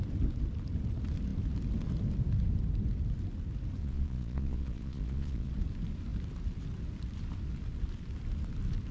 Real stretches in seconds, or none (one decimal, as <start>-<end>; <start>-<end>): 0.0-3.8; 5.5-8.9